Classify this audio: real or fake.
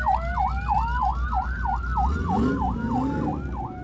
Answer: real